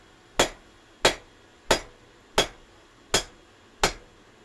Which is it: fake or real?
real